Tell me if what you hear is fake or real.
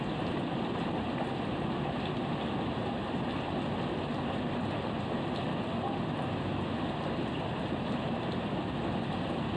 real